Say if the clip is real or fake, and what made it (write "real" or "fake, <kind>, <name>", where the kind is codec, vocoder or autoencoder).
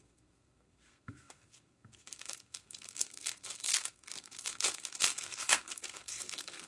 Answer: fake, codec, SNAC